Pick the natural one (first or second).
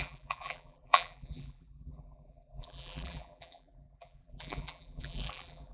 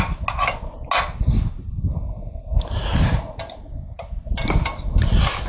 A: second